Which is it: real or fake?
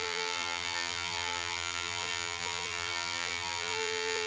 fake